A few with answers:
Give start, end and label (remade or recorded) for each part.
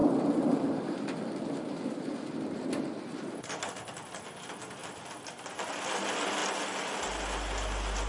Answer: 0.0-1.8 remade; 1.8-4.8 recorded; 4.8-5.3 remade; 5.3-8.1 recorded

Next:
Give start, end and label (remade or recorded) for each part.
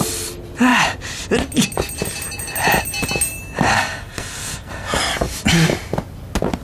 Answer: 0.0-3.7 recorded; 3.7-5.0 remade; 5.0-6.6 recorded